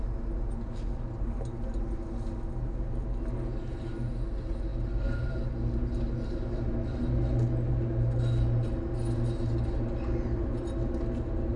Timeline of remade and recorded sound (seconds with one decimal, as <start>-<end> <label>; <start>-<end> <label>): 0.0-11.6 recorded